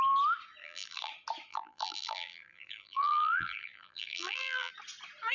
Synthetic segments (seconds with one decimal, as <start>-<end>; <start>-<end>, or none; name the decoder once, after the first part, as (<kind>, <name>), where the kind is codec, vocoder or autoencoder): 0.6-1.1 (vocoder, BigVGAN v2); 1.5-4.7